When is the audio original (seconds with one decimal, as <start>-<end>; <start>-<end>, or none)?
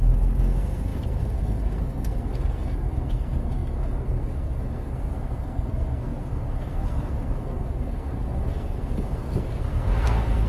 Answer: none